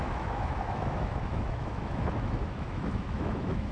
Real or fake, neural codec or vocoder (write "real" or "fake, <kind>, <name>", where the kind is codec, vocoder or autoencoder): fake, autoencoder, DAC-VAE